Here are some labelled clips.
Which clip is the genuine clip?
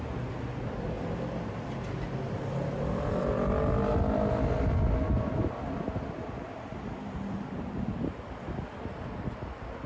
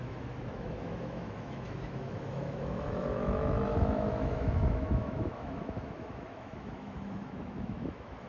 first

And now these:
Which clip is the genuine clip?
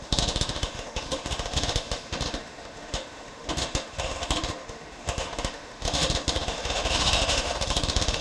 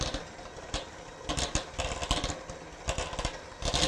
second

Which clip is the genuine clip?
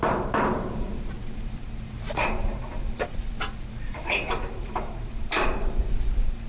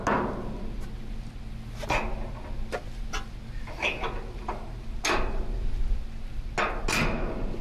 second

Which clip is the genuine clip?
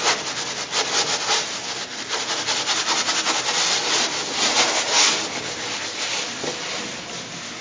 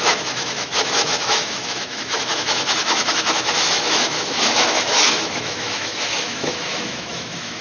first